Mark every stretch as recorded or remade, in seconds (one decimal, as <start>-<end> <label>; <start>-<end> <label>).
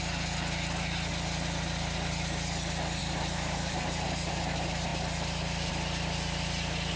0.0-3.0 recorded; 3.0-4.3 remade; 4.3-7.0 recorded